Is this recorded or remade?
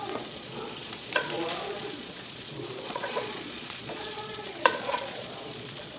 remade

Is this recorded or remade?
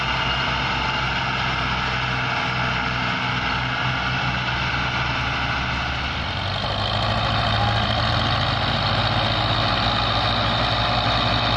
recorded